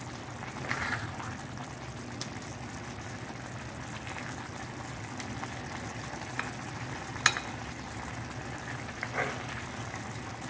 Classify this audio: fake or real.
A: real